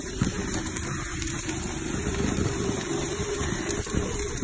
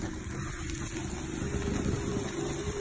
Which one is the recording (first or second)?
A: second